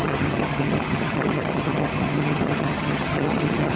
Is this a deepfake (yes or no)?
yes